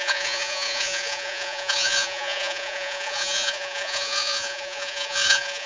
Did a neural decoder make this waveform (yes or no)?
yes